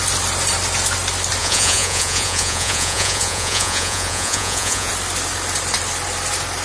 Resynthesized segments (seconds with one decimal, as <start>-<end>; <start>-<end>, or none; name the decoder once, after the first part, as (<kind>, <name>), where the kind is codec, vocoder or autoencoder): 1.4-4.9 (vocoder, Vocos)